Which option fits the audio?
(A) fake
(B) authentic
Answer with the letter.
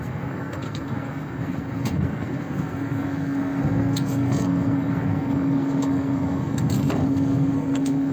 A